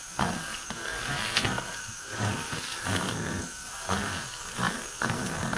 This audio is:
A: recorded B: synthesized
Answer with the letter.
B